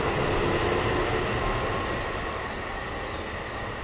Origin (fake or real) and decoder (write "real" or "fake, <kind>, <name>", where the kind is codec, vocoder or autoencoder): real